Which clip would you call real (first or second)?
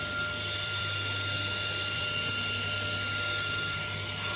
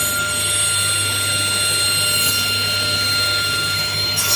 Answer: second